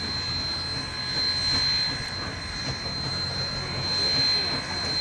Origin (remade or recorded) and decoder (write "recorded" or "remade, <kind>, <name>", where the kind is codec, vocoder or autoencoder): recorded